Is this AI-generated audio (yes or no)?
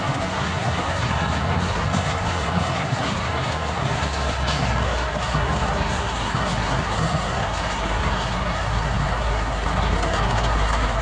yes